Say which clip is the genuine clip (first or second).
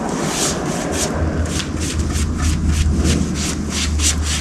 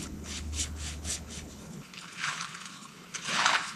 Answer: first